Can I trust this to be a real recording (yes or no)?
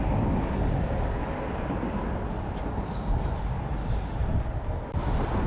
yes